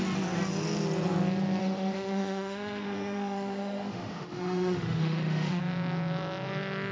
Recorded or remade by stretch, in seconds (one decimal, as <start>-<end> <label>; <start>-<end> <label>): 0.0-1.6 recorded; 1.6-5.6 remade; 5.6-6.9 recorded